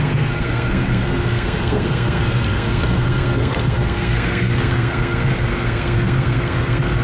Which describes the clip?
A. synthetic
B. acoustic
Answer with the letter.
A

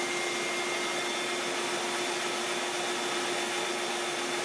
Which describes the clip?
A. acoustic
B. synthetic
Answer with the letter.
A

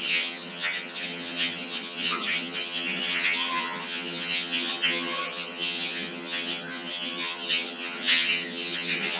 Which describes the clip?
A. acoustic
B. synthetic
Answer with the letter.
B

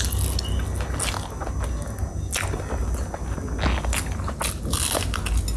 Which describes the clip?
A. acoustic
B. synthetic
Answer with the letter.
A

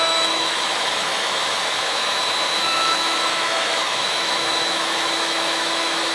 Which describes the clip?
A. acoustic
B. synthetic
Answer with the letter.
B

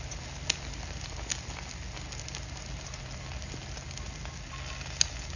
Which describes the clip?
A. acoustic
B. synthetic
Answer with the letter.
A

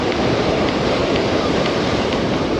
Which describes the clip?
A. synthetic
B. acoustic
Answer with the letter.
A